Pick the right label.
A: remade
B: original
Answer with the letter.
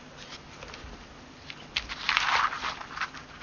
B